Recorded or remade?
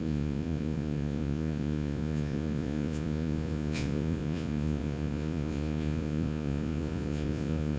remade